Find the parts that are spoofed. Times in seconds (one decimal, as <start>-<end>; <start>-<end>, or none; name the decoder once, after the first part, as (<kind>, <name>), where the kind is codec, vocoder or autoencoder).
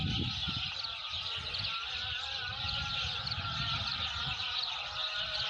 none